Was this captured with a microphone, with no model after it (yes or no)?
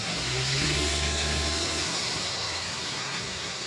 no